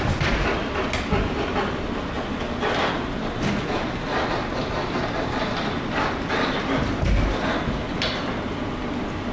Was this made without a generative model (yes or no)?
yes